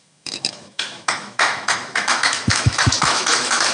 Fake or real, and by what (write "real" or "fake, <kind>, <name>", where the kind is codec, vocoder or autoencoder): fake, autoencoder, DAC-VAE